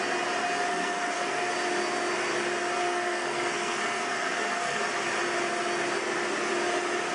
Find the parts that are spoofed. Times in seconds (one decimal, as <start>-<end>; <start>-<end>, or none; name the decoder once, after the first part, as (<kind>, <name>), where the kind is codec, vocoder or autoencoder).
0.7-1.5 (codec, SNAC); 2.8-4.8